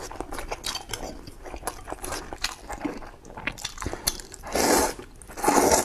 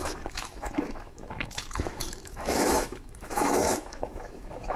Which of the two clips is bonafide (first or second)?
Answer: first